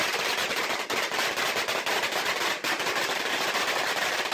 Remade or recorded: recorded